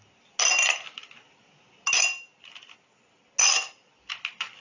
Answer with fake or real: real